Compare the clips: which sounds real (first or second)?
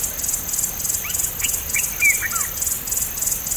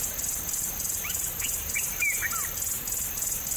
first